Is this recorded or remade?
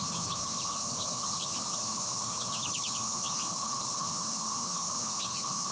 remade